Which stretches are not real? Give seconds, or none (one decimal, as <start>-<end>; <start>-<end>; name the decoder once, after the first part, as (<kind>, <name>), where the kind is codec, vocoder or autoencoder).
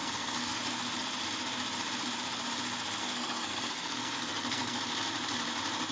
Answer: 0.0-0.6 (codec, SNAC); 3.0-4.8